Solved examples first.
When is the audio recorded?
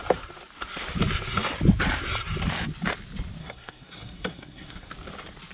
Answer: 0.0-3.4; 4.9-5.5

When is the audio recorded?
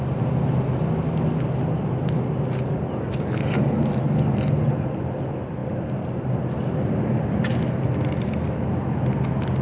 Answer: 0.0-9.6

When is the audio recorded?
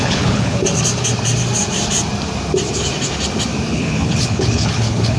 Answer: 0.6-3.7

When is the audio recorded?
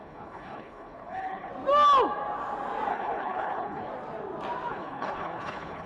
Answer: 1.5-2.9; 3.9-4.7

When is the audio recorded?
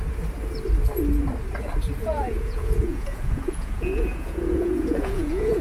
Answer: 0.0-2.0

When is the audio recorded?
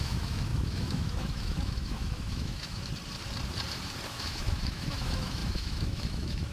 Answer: 2.9-4.1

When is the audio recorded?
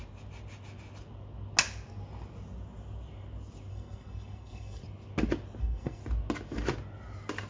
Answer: 0.0-3.7; 4.8-5.6; 6.0-7.5